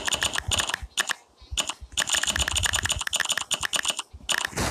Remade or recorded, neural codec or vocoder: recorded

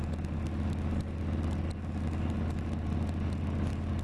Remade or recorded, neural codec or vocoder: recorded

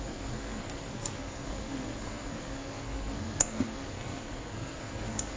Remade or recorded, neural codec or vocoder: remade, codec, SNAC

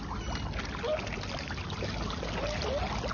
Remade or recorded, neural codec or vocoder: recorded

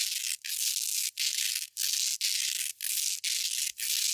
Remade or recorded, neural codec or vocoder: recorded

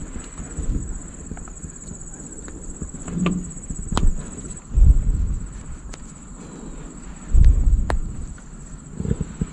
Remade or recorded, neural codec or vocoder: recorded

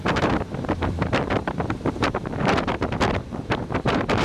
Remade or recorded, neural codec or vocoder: remade, vocoder, BigVGAN v2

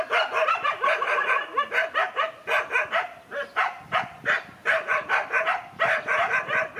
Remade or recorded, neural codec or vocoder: recorded